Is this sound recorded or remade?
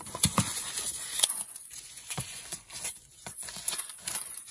remade